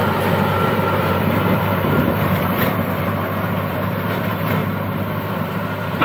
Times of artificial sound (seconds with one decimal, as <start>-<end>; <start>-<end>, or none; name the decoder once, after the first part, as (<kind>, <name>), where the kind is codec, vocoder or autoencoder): 0.7-4.6 (vocoder, BigVGAN v2); 5.3-6.0